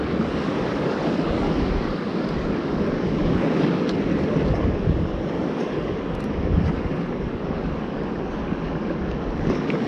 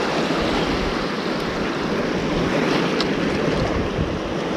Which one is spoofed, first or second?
first